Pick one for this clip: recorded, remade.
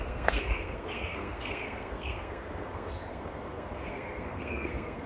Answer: remade